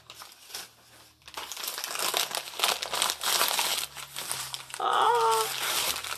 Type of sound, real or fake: real